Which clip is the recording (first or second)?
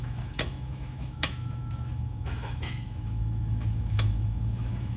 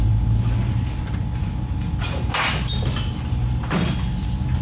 second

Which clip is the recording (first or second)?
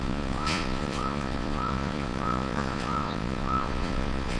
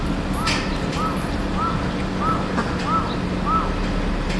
second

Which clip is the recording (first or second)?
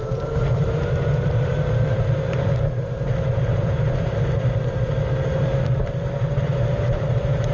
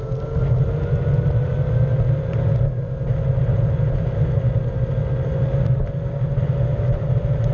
second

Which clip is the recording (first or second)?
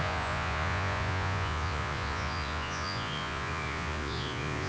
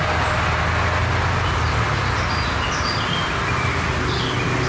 second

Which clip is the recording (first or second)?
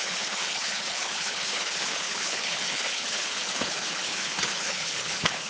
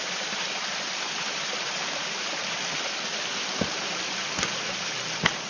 second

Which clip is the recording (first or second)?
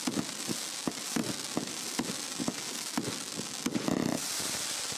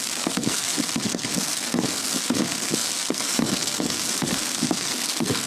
first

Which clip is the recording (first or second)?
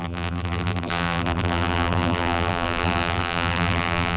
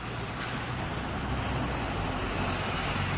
second